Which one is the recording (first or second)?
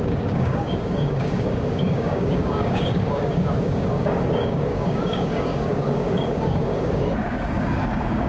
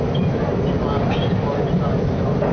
second